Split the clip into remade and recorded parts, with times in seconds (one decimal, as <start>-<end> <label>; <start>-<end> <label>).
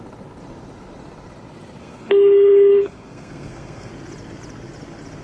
0.0-1.8 recorded; 1.8-3.9 remade; 3.9-5.2 recorded